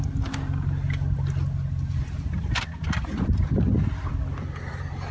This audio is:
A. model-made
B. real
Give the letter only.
B